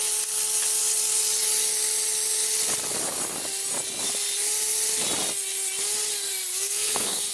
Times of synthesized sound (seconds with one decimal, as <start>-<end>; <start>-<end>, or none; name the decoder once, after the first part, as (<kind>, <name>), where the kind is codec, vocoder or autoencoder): 6.5-7.3 (codec, SNAC)